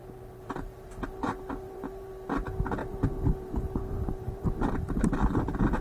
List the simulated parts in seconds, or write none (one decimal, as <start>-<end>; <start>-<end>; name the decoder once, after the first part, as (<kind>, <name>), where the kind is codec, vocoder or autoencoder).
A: 0.0-2.1 (vocoder, BigVGAN v2); 2.8-5.0